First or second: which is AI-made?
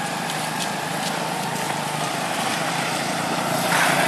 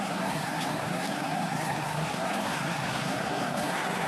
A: second